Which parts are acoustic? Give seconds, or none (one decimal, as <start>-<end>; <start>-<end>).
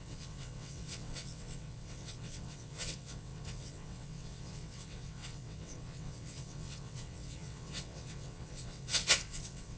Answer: none